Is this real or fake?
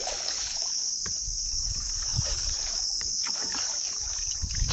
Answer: fake